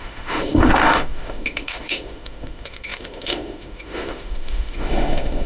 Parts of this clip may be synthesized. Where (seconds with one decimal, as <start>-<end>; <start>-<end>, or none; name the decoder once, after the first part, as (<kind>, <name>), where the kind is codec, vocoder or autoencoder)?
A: 0.0-5.5 (autoencoder, DAC-VAE)